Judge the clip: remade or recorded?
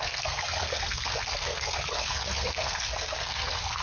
remade